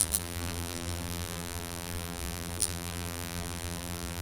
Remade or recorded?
remade